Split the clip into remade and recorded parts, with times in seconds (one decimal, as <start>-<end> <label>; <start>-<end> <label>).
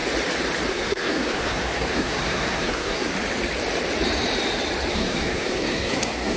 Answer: 0.0-0.7 recorded; 0.7-3.1 remade; 3.1-4.9 recorded; 4.9-6.4 remade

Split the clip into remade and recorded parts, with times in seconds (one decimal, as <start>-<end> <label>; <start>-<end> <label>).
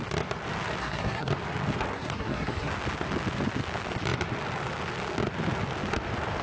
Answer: 0.0-0.8 recorded; 0.8-1.3 remade; 1.3-1.9 recorded; 1.9-2.7 remade; 2.7-6.4 recorded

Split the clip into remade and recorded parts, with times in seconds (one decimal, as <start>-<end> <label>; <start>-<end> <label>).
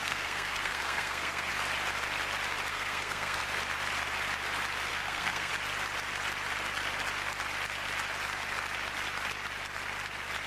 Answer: 0.0-1.5 remade; 1.5-2.7 recorded; 2.7-3.4 remade; 3.4-4.9 recorded; 4.9-5.5 remade; 5.5-10.5 recorded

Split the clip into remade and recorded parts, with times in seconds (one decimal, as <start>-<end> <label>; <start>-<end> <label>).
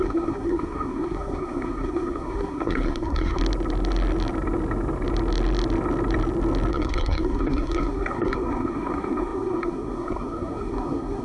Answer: 0.0-3.4 remade; 3.4-6.7 recorded; 6.7-11.2 remade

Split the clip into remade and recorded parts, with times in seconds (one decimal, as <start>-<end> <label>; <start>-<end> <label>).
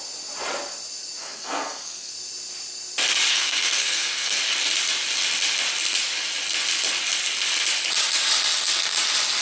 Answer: 0.0-1.2 recorded; 1.2-2.1 remade; 2.1-3.3 recorded; 3.3-4.4 remade; 4.4-9.4 recorded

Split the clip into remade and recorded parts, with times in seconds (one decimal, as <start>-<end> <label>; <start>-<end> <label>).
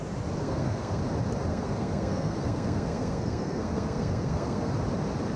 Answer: 0.0-0.4 recorded; 0.4-1.0 remade; 1.0-1.5 recorded; 1.5-4.7 remade; 4.7-5.4 recorded